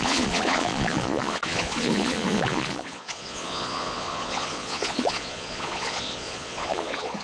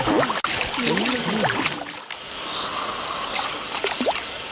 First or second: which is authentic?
second